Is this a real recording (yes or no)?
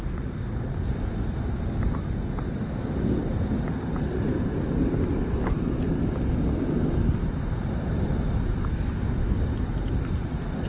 yes